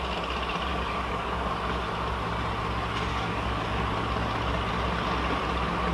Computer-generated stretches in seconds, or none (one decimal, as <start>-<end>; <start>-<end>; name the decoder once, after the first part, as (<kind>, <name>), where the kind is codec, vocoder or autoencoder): 0.7-1.5 (codec, DAC); 3.1-3.7

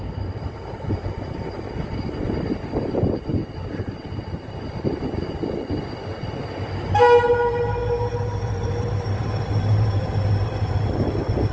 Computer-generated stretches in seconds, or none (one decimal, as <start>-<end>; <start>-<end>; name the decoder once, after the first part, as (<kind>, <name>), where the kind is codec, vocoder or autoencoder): 3.4-4.7 (vocoder, BigVGAN v2); 7.8-10.7

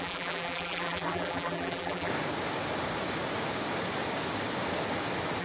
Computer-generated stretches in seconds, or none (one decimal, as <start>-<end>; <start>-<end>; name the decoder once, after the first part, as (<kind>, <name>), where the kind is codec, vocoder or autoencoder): 0.0-2.1 (vocoder, BigVGAN v2)